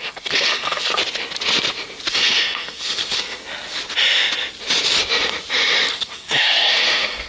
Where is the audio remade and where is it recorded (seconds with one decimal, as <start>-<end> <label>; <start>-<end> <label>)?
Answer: 0.0-1.0 remade; 1.0-2.1 recorded; 2.1-3.4 remade; 3.4-5.9 recorded; 5.9-7.3 remade